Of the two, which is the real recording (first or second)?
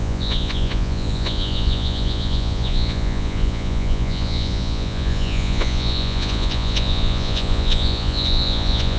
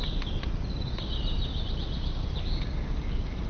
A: second